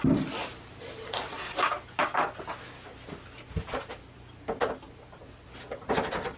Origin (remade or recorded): recorded